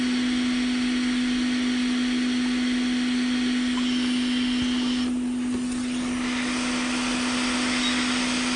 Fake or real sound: real